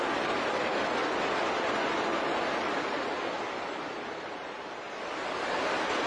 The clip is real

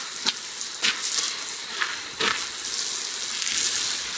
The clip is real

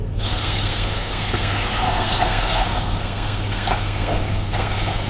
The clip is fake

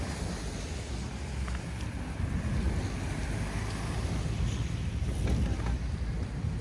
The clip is real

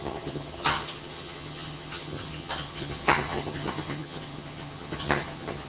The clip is fake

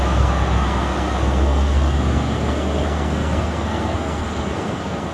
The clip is fake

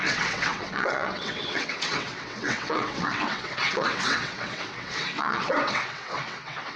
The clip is fake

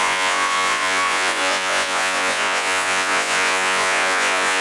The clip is fake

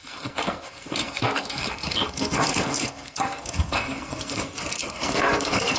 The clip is fake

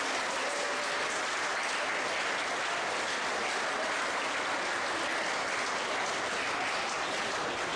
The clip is real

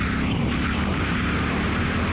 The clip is real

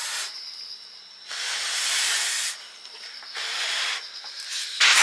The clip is real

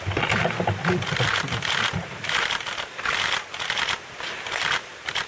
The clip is real